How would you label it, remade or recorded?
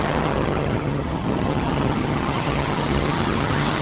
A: remade